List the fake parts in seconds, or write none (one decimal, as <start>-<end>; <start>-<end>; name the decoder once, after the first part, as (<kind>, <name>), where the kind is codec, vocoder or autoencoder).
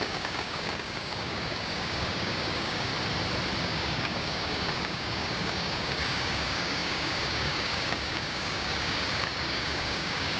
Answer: 0.0-2.9 (codec, DAC); 3.6-10.4